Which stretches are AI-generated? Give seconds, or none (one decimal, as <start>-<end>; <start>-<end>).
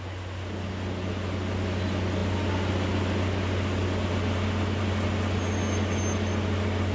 none